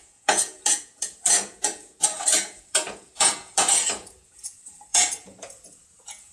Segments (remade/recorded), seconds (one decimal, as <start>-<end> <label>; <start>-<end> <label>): 0.0-6.3 remade